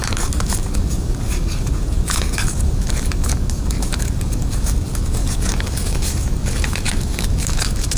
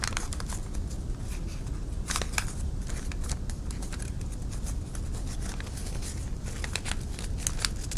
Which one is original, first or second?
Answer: second